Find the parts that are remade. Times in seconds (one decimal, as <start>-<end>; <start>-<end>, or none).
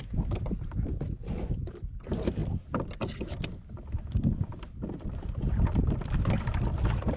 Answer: none